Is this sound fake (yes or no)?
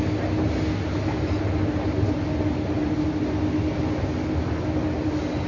no